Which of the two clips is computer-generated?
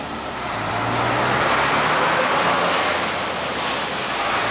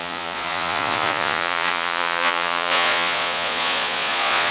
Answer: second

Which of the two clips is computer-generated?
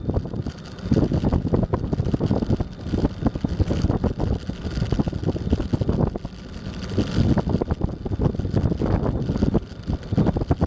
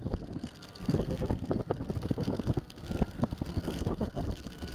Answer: second